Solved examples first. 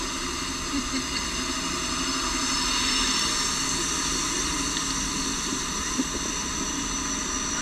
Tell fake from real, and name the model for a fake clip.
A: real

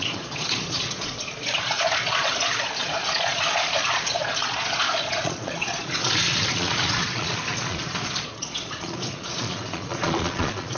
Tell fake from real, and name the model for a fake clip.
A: fake, vocoder, Vocos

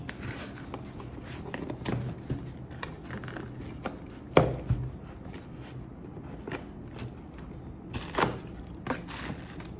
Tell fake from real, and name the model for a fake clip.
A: real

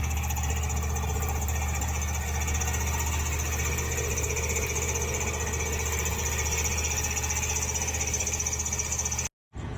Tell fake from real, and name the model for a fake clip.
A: real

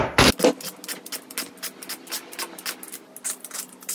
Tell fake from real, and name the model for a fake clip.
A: real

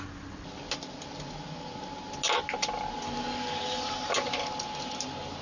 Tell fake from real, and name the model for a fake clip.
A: real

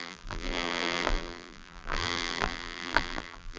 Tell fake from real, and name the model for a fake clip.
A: fake, vocoder, BigVGAN v2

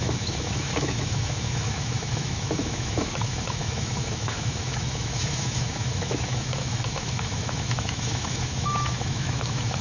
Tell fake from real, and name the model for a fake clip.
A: fake, autoencoder, DAC-VAE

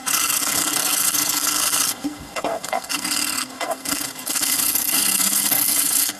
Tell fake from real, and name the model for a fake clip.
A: fake, codec, SNAC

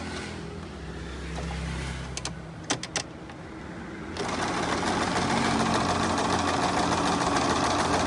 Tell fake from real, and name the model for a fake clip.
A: real